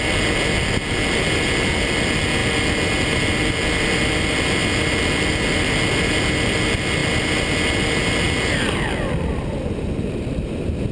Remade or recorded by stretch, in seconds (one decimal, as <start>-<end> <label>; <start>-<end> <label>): 0.0-10.9 recorded